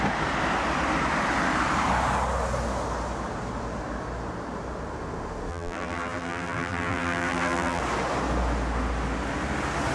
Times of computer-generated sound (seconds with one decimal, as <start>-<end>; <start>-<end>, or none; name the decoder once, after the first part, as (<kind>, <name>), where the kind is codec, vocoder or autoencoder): 5.5-7.8 (vocoder, BigVGAN v2)